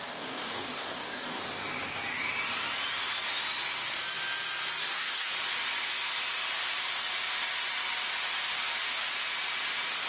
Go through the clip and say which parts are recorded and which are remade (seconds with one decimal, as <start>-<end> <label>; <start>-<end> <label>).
0.0-1.4 remade; 1.4-4.8 recorded; 4.8-5.3 remade; 5.3-10.1 recorded